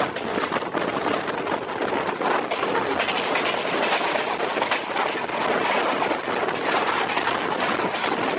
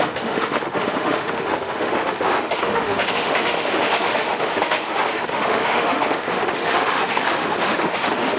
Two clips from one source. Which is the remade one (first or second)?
second